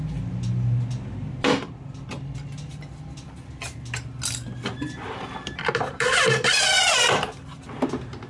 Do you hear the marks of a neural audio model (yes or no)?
no